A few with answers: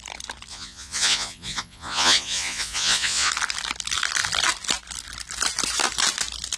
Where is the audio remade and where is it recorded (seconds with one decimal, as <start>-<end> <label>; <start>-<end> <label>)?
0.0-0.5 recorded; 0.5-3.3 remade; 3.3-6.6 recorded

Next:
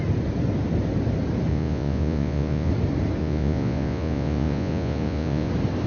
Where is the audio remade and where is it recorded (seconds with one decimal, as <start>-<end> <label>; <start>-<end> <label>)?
0.0-1.5 recorded; 1.5-2.7 remade; 2.7-3.2 recorded; 3.2-5.5 remade; 5.5-5.9 recorded

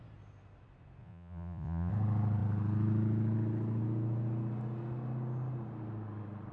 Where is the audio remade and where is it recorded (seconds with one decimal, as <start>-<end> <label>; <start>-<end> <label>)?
0.0-1.0 recorded; 1.0-1.9 remade; 1.9-6.5 recorded

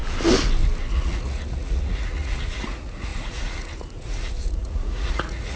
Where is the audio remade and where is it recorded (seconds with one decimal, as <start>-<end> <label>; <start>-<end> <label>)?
0.0-0.9 recorded; 0.9-5.6 remade